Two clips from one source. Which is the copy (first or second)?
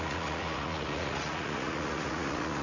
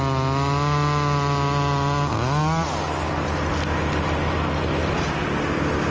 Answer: first